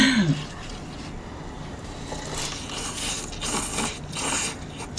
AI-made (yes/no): no